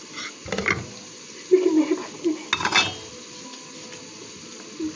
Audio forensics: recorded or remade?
recorded